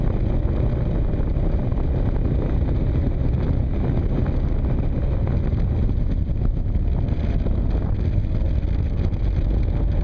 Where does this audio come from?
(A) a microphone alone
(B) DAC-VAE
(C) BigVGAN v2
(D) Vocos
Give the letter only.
A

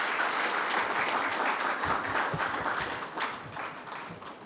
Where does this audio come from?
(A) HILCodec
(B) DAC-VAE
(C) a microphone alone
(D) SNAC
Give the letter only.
C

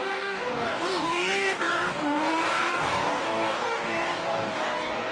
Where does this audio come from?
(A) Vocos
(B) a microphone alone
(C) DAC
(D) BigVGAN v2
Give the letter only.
C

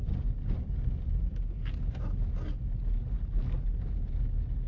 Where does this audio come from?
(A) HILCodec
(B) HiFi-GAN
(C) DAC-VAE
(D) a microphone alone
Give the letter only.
D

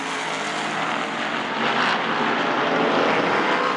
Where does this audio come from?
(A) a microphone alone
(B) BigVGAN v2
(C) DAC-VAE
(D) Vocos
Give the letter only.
A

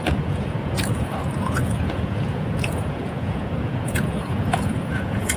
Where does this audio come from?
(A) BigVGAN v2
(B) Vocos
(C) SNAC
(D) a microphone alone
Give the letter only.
B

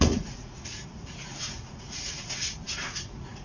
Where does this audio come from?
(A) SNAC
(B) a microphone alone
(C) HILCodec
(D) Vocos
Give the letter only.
D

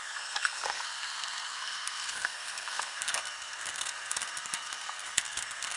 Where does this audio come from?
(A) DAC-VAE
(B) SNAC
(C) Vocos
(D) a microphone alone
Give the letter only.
B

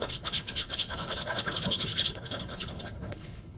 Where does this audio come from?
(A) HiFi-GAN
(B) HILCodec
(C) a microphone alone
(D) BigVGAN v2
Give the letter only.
B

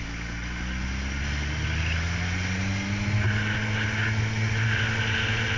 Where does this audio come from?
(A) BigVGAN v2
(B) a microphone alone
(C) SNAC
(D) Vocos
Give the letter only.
B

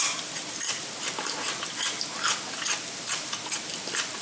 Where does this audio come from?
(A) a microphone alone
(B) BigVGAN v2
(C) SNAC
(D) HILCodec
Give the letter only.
A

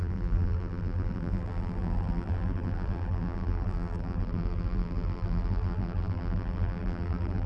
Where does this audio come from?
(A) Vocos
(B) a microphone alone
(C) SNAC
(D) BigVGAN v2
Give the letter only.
D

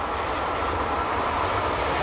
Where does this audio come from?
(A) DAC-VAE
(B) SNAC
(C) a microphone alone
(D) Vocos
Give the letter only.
C